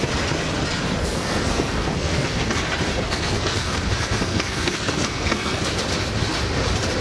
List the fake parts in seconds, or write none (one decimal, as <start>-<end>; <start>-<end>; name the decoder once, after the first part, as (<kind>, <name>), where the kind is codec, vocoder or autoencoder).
1.0-2.5 (codec, SNAC); 3.0-5.6